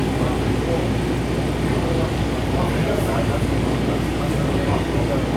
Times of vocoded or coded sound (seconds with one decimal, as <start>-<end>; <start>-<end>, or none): 2.1-5.4